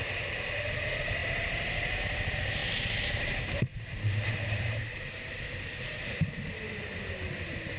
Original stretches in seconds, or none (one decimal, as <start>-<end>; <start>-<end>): 0.0-3.7; 5.1-7.8